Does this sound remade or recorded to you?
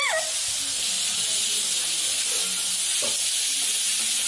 recorded